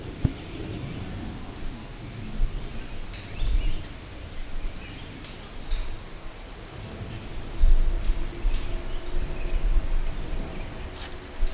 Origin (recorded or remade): recorded